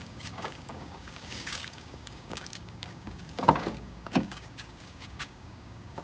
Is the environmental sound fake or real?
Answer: fake